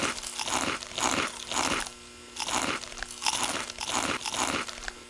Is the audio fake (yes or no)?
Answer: no